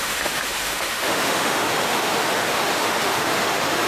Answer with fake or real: fake